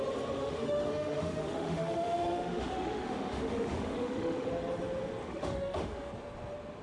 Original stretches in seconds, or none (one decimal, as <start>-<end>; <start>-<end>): 0.0-0.4; 4.5-5.2; 6.1-6.8